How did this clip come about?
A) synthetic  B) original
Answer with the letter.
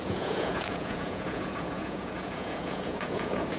A